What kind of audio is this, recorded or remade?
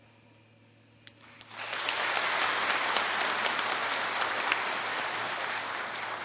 recorded